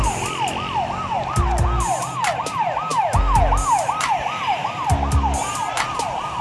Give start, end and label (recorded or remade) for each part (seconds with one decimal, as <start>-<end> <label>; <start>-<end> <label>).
0.0-6.4 recorded